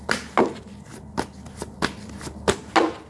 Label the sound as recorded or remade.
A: recorded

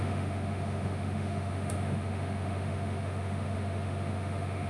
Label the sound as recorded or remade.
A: remade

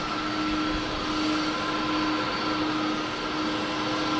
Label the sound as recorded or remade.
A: recorded